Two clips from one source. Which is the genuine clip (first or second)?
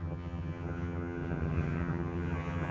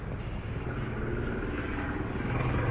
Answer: second